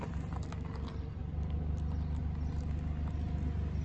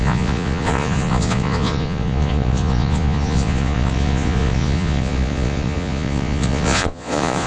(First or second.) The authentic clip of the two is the first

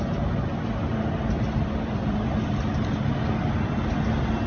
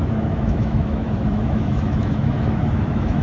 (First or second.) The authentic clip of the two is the first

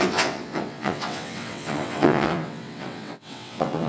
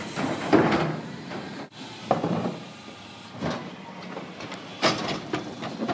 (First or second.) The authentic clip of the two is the second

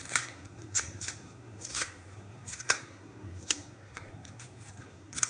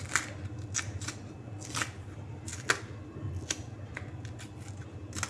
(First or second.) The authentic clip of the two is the second